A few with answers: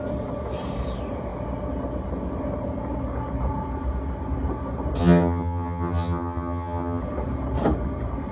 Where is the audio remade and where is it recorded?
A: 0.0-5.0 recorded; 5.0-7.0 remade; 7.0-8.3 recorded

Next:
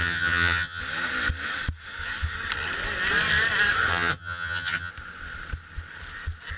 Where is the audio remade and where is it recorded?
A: 0.0-0.8 remade; 0.8-3.9 recorded; 3.9-4.9 remade; 4.9-6.6 recorded

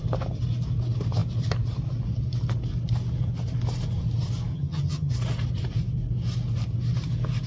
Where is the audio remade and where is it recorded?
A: 0.0-4.5 recorded; 4.5-5.1 remade; 5.1-7.5 recorded

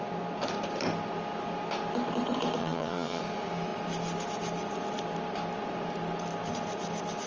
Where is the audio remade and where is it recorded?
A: 0.0-2.6 recorded; 2.6-3.2 remade; 3.2-7.3 recorded

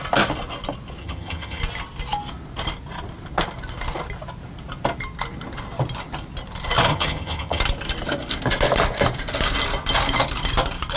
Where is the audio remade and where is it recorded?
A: 0.0-1.0 recorded; 1.0-1.6 remade; 1.6-6.9 recorded; 6.9-7.6 remade; 7.6-11.0 recorded

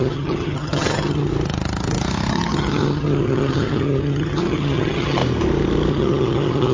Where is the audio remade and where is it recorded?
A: 0.0-1.3 remade; 1.3-2.3 recorded; 2.3-5.2 remade; 5.2-5.9 recorded; 5.9-6.7 remade